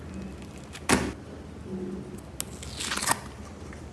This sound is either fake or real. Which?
real